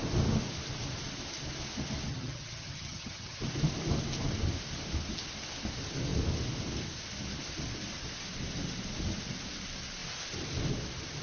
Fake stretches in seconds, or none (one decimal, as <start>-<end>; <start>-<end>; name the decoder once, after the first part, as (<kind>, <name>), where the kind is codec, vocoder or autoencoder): 2.1-3.4 (vocoder, HiFi-GAN)